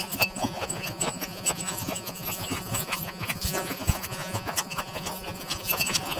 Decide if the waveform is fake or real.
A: fake